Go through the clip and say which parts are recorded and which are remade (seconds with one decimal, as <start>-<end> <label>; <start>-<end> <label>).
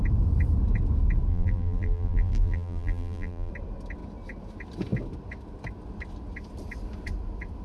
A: 0.0-1.3 recorded; 1.3-3.5 remade; 3.5-7.6 recorded